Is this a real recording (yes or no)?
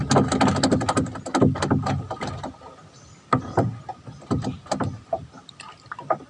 yes